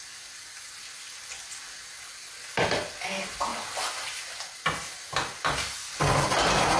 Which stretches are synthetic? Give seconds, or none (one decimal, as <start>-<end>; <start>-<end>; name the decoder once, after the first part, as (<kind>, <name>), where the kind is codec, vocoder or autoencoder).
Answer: none